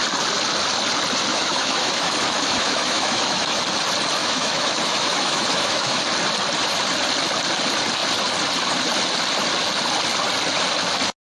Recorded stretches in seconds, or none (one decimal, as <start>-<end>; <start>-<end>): 0.0-1.3; 3.6-4.2; 6.0-11.2